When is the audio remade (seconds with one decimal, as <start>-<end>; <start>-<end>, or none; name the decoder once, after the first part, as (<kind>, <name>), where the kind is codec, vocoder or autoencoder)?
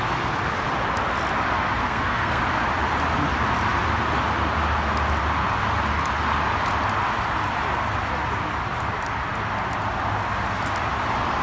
1.8-2.4 (codec, SNAC)